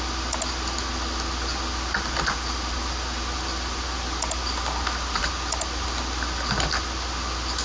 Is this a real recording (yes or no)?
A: yes